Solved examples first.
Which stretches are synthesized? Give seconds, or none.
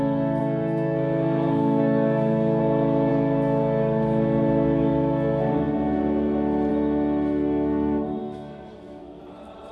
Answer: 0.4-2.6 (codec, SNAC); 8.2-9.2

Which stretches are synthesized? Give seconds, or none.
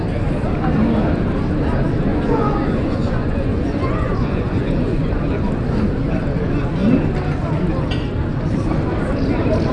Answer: 2.1-5.1 (vocoder, Vocos)